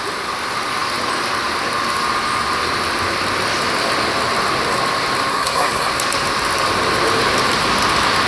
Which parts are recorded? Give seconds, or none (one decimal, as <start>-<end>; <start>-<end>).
0.0-5.3; 5.9-8.3